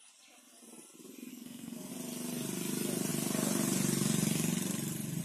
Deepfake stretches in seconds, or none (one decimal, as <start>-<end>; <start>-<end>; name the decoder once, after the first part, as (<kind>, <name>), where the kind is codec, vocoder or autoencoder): 1.3-1.9 (codec, SNAC)